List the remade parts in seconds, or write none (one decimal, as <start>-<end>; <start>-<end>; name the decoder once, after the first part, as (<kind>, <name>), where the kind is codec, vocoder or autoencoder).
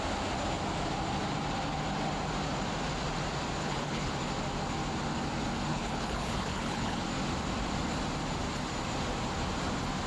3.6-4.1 (codec, HILCodec); 5.7-7.0